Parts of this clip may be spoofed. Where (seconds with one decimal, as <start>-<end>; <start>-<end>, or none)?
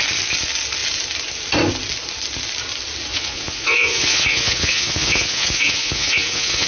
3.1-6.7